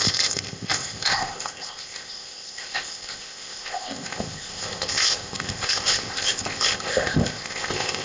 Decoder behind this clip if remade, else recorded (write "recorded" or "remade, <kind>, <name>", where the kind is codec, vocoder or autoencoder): remade, codec, ZipCodec